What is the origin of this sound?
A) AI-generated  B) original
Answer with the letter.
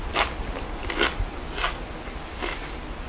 B